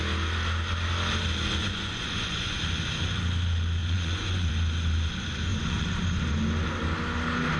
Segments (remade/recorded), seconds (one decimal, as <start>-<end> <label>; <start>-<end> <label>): 0.0-1.6 recorded; 1.6-2.6 remade; 2.6-3.8 recorded; 3.8-4.5 remade; 4.5-5.5 recorded; 5.5-6.0 remade; 6.0-7.6 recorded